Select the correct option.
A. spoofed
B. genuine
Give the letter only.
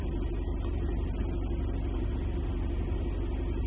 B